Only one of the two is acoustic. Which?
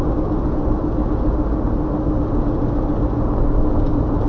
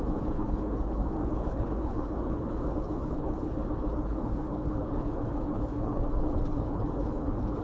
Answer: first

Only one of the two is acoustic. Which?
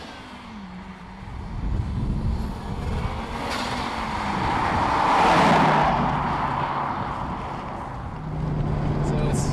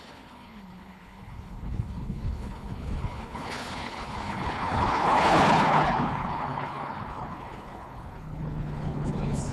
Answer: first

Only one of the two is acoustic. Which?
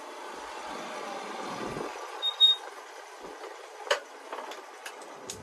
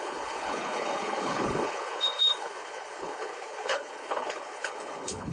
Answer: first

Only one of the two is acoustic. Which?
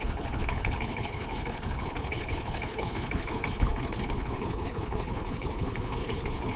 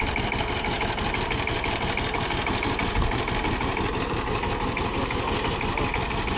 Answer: second